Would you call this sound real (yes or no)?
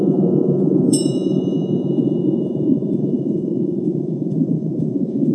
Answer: no